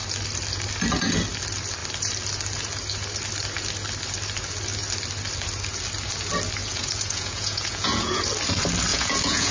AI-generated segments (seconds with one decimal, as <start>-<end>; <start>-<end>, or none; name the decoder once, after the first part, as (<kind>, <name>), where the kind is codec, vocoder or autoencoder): 6.6-8.3 (vocoder, Vocos); 8.9-9.5